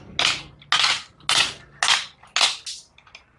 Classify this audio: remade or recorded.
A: recorded